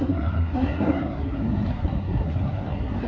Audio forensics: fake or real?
fake